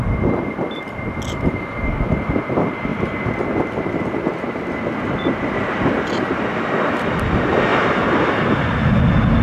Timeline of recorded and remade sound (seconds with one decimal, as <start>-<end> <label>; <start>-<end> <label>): 0.0-9.4 recorded